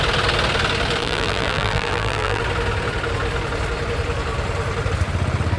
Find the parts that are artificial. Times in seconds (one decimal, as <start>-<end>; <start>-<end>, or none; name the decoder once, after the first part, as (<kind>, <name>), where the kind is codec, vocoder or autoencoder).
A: 1.0-2.4 (vocoder, BigVGAN v2)